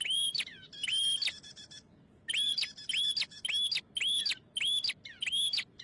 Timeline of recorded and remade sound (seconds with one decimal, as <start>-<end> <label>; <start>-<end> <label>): 0.0-5.8 recorded